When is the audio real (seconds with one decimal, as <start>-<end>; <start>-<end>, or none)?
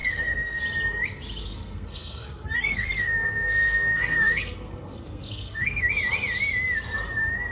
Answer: 0.6-1.4; 5.9-7.5